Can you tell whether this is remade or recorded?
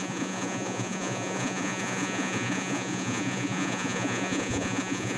remade